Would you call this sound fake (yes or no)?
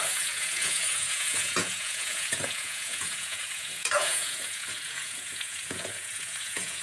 yes